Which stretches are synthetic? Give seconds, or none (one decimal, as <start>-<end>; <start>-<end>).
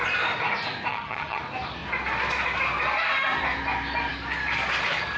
0.9-1.4